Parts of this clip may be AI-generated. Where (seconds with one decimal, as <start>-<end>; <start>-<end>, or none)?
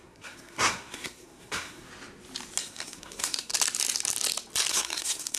0.0-1.9; 2.6-3.5; 4.7-5.4